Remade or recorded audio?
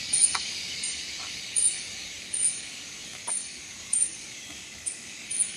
remade